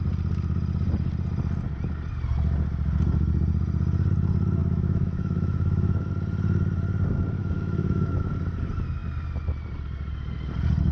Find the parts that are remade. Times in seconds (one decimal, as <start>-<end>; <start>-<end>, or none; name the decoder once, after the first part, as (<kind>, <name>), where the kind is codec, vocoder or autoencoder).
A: 4.6-6.1 (autoencoder, DAC-VAE); 7.4-8.3